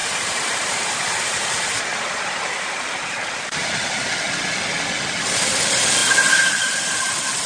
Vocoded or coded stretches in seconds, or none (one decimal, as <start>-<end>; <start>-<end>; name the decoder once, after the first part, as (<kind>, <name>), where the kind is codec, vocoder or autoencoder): 0.0-4.1 (vocoder, BigVGAN v2); 6.0-7.1